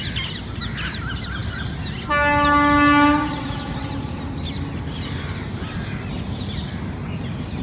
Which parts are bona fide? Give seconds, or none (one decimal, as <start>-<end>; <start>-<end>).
0.0-7.6